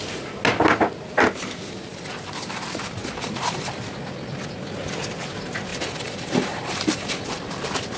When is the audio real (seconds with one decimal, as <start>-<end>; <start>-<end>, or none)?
0.0-1.9; 2.6-3.0; 3.8-5.7; 7.6-8.0